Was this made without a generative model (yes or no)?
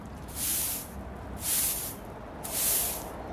no